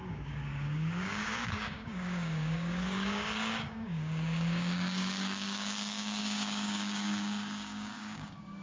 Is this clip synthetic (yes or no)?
yes